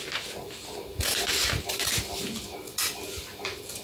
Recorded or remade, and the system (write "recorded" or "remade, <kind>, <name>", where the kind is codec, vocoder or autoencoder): recorded